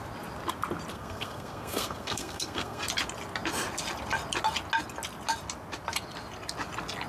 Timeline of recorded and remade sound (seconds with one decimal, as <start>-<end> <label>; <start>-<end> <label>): 0.0-0.9 recorded; 0.9-2.8 remade; 2.8-7.1 recorded